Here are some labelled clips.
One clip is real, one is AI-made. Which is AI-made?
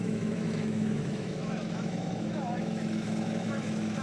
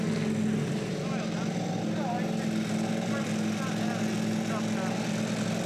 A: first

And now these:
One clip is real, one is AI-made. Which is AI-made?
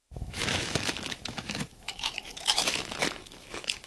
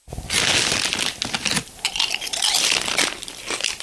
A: first